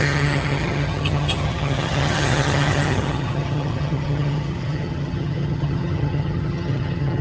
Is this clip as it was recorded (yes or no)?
no